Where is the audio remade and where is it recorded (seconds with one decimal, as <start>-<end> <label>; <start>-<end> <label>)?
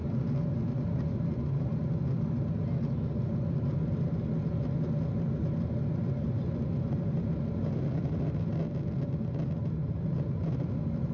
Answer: 0.0-11.1 recorded